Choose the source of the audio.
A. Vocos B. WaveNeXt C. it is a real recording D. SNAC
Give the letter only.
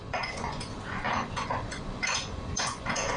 A